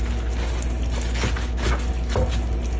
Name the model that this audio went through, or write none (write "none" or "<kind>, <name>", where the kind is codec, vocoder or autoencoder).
none